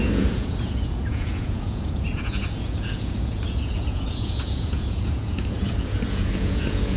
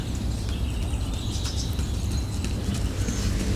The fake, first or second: first